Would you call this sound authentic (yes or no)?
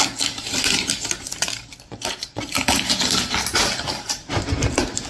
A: no